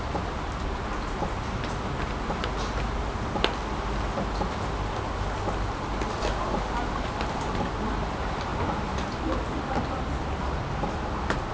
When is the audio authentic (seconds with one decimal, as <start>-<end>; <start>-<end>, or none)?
0.0-11.5